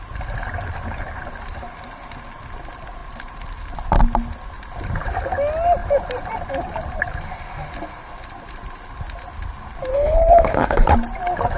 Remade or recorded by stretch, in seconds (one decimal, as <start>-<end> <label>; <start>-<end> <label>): 0.0-9.9 recorded; 9.9-10.9 remade; 10.9-11.6 recorded